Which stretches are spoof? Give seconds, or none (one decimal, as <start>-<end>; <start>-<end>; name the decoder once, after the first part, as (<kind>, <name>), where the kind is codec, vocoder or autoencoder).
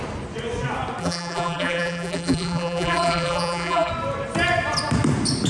1.0-3.9 (vocoder, BigVGAN v2)